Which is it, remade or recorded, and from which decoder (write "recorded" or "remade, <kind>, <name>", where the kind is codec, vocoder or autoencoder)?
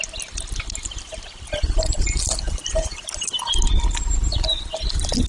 recorded